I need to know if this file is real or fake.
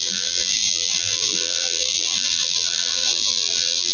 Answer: fake